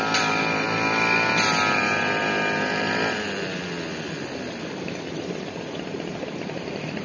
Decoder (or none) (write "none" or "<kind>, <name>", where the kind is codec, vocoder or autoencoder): none